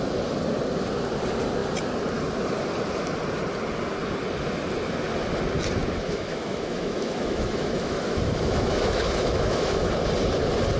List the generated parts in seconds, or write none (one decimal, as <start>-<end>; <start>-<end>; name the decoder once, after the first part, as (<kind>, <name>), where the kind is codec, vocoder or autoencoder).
5.8-9.9 (autoencoder, DAC-VAE)